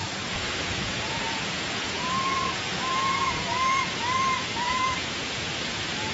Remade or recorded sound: remade